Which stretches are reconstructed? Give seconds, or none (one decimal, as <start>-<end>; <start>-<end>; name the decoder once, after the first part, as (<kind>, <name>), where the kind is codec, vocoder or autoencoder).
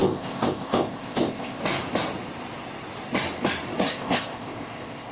0.0-1.6 (codec, ZipCodec); 3.9-5.1